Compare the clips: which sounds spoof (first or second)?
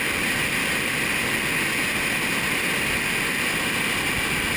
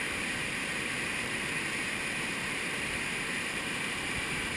second